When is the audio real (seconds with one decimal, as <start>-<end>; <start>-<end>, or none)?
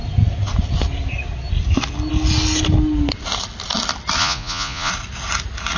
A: 0.0-4.2; 4.9-5.8